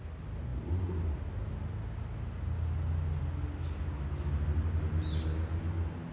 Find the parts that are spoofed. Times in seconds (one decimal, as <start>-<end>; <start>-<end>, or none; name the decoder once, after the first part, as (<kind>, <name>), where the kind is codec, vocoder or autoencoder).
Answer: none